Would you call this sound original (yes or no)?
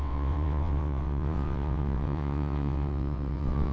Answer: no